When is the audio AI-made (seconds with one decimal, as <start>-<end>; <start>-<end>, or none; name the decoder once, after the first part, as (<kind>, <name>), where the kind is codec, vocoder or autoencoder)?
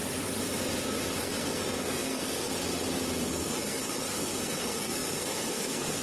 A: 1.2-2.5 (codec, SNAC); 3.3-6.0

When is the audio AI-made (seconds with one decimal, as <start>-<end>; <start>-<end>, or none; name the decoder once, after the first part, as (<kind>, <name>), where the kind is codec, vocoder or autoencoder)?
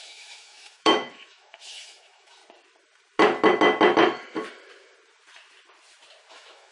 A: 0.0-2.4 (autoencoder, DAC-VAE); 6.3-6.7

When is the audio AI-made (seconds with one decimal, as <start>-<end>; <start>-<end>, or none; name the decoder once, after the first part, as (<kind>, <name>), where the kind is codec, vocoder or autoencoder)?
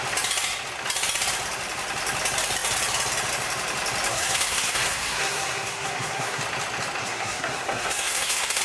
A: 4.1-6.4 (codec, SNAC); 7.0-8.6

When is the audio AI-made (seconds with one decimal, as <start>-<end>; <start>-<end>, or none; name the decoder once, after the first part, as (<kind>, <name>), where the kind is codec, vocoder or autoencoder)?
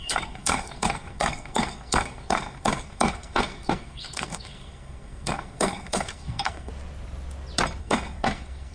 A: 0.0-6.7 (codec, SNAC); 7.8-8.7